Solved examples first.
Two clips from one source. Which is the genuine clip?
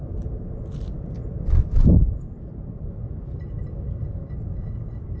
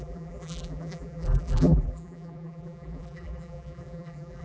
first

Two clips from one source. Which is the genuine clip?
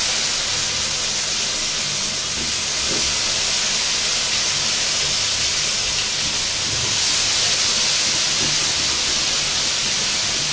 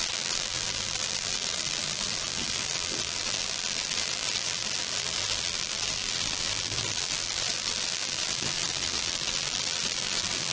first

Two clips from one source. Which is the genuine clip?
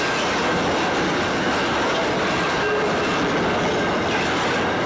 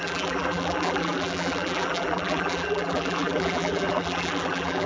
first